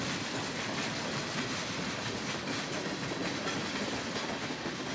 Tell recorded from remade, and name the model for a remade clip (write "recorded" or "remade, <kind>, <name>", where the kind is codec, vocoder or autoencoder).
recorded